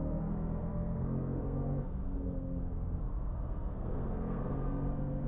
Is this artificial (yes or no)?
yes